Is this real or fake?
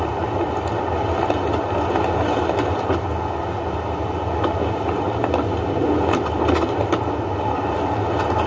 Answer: real